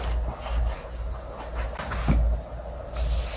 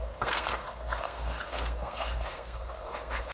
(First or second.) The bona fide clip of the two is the first